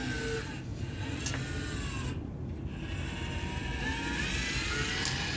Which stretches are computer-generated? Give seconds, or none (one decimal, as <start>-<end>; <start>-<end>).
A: none